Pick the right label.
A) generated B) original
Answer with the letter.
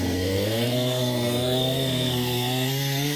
A